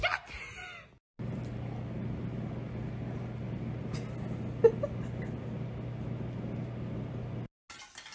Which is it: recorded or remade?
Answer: recorded